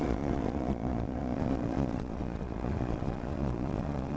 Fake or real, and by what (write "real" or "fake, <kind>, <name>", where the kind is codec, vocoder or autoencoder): fake, vocoder, Vocos